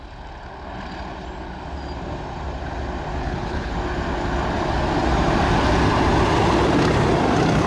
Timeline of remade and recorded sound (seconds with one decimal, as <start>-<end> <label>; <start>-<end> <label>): 0.0-3.2 recorded; 3.2-3.7 remade; 3.7-7.7 recorded

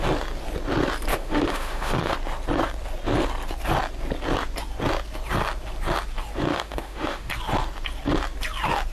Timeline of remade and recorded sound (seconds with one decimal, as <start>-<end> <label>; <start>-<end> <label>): 0.0-1.1 recorded; 1.1-2.1 remade; 2.1-6.5 recorded; 6.5-7.3 remade; 7.3-8.9 recorded

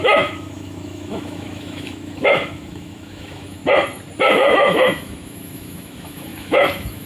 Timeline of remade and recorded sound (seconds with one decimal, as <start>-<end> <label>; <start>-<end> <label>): 0.0-3.6 remade; 3.6-4.2 recorded; 4.2-7.1 remade

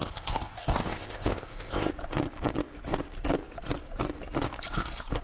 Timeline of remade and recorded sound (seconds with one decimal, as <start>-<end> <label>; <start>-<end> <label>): 0.0-1.9 remade; 1.9-5.2 recorded

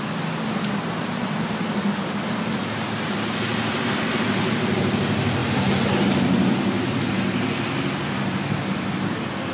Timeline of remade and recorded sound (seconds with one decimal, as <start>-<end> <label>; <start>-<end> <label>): 0.0-9.5 recorded

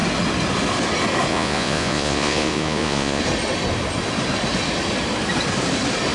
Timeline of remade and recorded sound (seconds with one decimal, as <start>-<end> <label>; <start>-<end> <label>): 0.0-1.3 recorded; 1.3-3.2 remade; 3.2-6.1 recorded

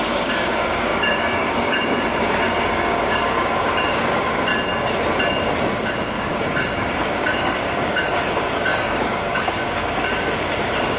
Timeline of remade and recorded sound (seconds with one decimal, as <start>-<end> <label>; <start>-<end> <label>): 0.0-4.5 remade; 4.5-5.8 recorded; 5.8-11.0 remade